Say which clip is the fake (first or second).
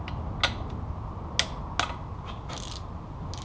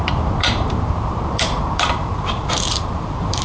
second